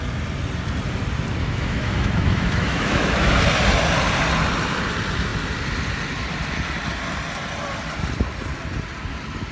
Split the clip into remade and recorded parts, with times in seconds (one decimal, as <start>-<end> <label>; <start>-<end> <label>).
0.0-1.4 recorded; 1.4-3.3 remade; 3.3-9.5 recorded